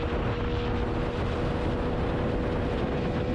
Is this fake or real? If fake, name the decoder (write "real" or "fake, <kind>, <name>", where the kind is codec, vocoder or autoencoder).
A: real